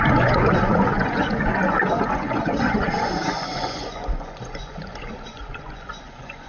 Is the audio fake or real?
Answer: fake